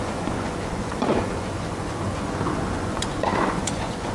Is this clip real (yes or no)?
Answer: no